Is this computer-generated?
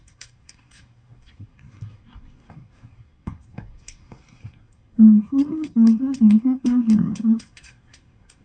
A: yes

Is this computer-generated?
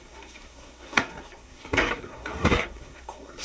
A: yes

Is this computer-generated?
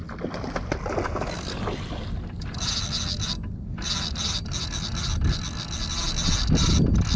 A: no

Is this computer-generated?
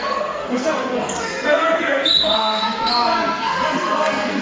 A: yes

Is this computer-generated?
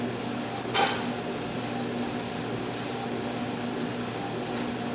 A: no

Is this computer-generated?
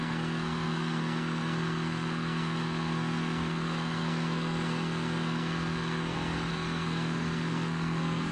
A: yes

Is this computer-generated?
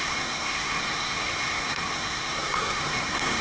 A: yes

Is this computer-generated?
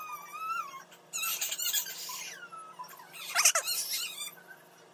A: no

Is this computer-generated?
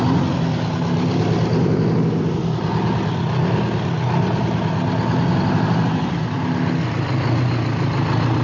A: no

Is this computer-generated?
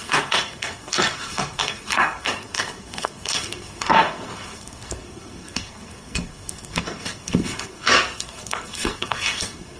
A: yes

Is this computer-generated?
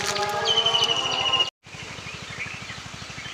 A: no